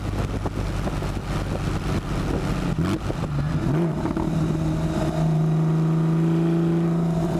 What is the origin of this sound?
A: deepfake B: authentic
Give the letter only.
B